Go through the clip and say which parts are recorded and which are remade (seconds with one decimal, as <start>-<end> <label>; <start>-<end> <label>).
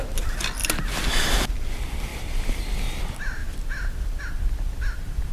0.0-0.6 recorded; 0.6-1.3 remade; 1.3-2.1 recorded; 2.1-2.6 remade; 2.6-3.4 recorded; 3.4-4.2 remade; 4.2-5.3 recorded